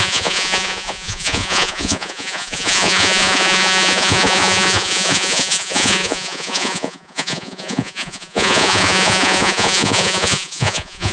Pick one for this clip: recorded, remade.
remade